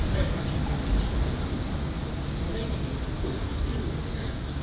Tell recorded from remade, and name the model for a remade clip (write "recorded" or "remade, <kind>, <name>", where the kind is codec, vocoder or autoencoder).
recorded